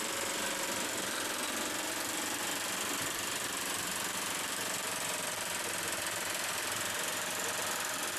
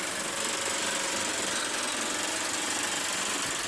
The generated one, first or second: first